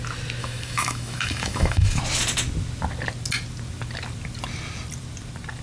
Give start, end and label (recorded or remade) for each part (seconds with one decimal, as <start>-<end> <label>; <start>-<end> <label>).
0.0-0.4 recorded; 0.4-2.0 remade; 2.0-5.6 recorded

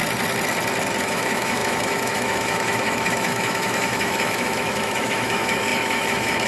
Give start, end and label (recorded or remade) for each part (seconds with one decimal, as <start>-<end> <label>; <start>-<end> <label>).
0.0-1.0 recorded; 1.0-6.5 remade

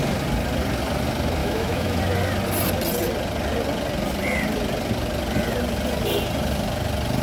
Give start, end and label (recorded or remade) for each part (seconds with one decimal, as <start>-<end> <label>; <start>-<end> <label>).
0.0-1.4 recorded; 1.4-2.0 remade; 2.0-7.2 recorded

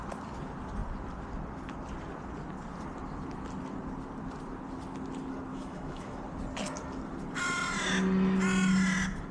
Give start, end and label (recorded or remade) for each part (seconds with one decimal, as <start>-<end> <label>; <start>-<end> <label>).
0.0-5.5 recorded; 5.5-6.2 remade; 6.2-9.3 recorded

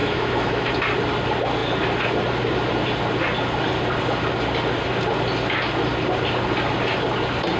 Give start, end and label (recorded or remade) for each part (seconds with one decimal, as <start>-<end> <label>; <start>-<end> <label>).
0.0-0.7 remade; 0.7-7.6 recorded

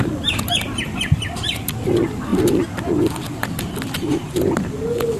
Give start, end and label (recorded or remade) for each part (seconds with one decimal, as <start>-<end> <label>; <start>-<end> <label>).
0.0-5.2 recorded

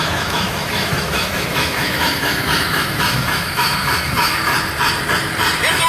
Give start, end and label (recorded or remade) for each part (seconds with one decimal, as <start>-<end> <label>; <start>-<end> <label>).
0.0-4.5 remade; 4.5-5.9 recorded